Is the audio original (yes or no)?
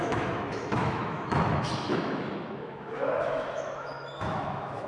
no